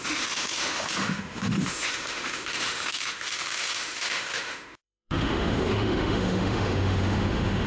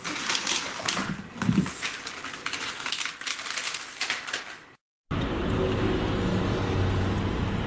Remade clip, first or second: first